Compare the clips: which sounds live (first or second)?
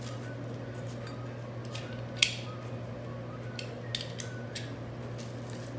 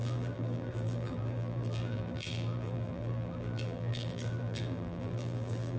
first